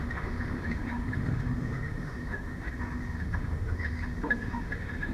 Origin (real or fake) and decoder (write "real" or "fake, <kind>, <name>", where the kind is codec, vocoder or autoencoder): fake, autoencoder, DAC-VAE